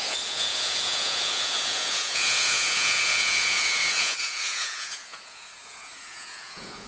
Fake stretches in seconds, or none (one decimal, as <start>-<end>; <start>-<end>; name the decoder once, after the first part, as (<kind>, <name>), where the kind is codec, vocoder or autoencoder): 0.0-6.9 (vocoder, Vocos)